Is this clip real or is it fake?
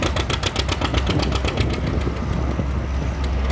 real